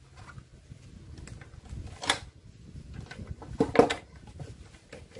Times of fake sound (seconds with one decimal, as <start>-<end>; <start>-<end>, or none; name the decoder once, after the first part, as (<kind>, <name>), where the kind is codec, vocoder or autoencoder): none